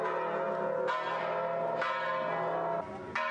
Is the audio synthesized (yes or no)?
no